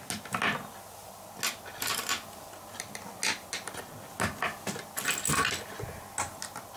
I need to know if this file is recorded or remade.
recorded